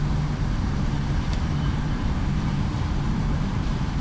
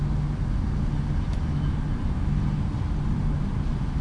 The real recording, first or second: second